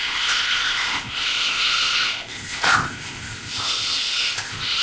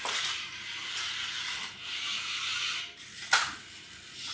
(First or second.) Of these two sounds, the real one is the second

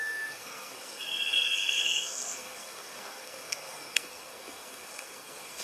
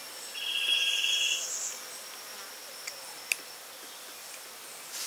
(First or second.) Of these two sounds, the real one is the second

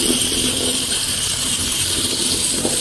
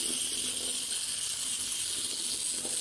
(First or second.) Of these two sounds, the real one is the second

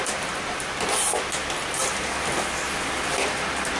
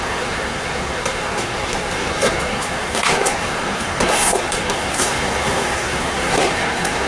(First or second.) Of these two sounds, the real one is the first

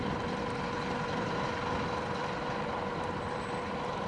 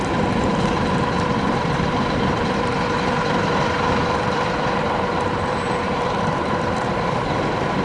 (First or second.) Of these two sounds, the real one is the first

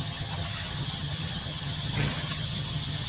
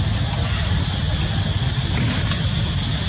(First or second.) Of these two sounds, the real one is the second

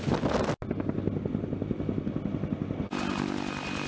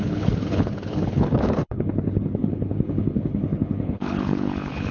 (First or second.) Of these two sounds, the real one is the first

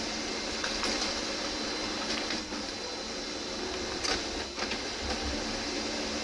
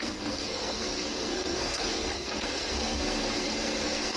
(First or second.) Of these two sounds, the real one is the first